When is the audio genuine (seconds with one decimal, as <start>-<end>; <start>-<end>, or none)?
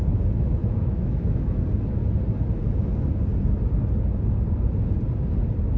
0.0-0.6; 1.6-5.8